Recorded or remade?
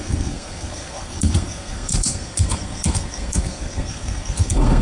remade